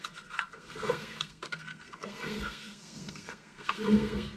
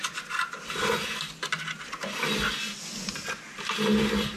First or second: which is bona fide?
second